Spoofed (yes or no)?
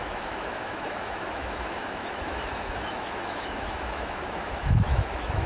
yes